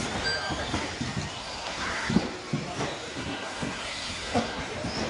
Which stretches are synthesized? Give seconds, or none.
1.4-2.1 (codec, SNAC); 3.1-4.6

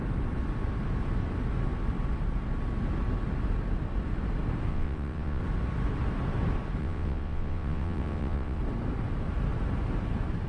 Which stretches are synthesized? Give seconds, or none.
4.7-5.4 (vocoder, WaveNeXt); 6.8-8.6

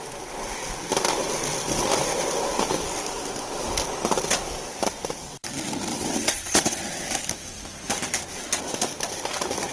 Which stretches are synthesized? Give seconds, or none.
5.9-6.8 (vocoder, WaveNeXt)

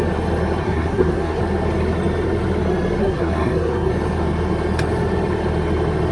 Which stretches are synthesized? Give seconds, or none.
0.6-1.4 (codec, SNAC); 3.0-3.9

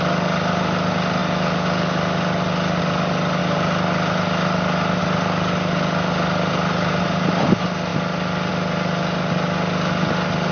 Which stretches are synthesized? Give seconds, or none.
none

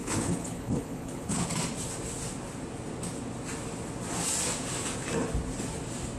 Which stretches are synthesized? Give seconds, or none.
0.0-1.5 (codec, HILCodec)